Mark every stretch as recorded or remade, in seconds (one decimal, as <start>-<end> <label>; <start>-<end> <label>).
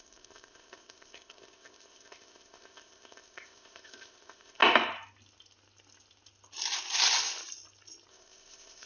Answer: 0.0-4.6 remade; 4.6-8.1 recorded; 8.1-8.9 remade